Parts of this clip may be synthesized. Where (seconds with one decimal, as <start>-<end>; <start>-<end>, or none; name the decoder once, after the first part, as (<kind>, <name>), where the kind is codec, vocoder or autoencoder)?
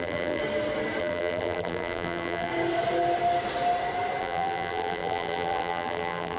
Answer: 0.0-0.4 (vocoder, BigVGAN v2); 1.0-2.5; 4.2-6.4